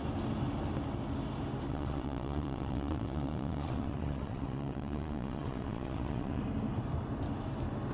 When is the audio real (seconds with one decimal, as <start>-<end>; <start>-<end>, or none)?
0.0-1.7; 6.4-7.9